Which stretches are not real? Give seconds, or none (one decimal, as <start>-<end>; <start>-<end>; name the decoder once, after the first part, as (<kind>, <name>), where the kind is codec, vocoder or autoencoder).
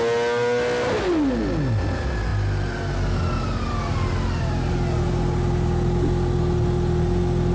none